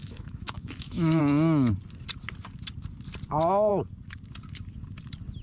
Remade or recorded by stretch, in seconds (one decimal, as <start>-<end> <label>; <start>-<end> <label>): 0.0-1.2 remade; 1.2-5.4 recorded